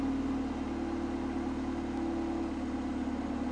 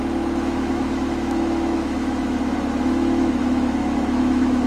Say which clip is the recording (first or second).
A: first